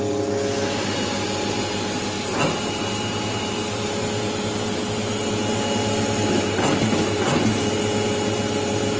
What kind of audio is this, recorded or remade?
recorded